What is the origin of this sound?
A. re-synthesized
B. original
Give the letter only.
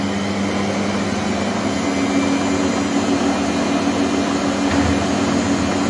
B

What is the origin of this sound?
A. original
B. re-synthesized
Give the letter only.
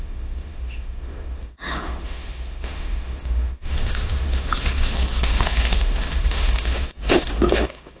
B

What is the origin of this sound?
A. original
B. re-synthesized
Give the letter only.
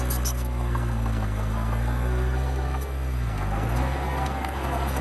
B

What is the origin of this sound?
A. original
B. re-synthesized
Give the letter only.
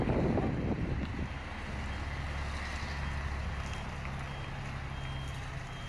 A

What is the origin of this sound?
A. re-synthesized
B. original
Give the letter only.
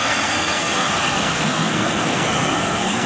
A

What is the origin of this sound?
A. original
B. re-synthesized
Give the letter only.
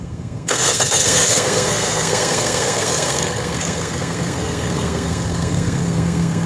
B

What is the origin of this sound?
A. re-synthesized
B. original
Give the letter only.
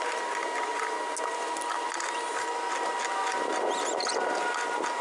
B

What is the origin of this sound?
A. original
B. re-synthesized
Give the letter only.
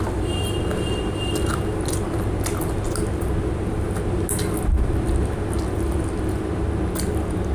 A